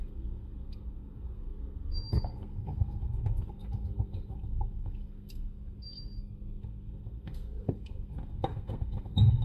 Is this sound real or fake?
fake